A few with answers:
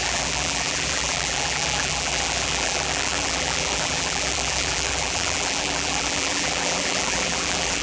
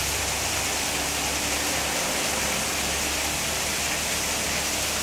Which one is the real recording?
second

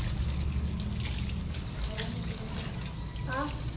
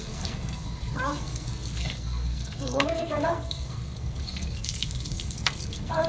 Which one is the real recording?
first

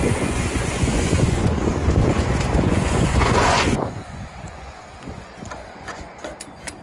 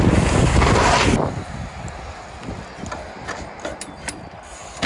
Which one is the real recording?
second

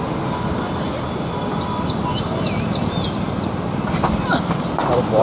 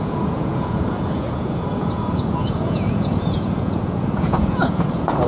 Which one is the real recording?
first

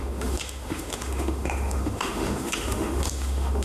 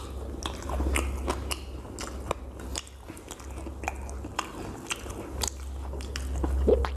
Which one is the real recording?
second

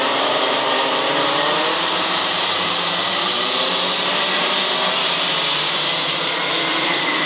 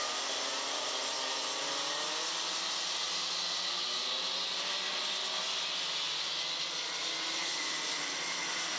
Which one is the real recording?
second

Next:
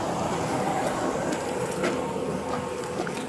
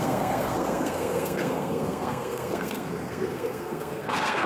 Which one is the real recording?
first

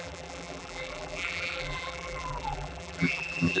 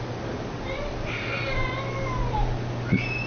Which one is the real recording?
second